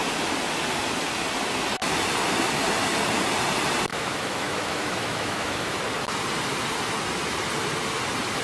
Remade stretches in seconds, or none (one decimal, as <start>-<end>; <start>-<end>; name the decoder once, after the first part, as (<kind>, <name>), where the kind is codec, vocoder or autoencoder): 3.9-5.8 (autoencoder, DAC-VAE)